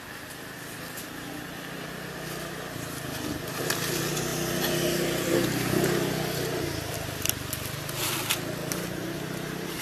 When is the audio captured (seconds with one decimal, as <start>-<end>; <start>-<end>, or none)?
0.0-8.6